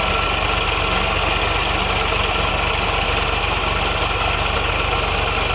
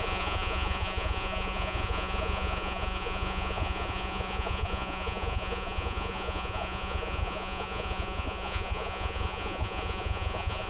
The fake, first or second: second